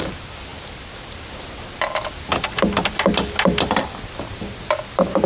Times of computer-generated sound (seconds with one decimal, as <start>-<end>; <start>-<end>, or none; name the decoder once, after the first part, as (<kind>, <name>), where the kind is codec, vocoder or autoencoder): none